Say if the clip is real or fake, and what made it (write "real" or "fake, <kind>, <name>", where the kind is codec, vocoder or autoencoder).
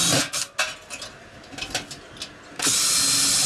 real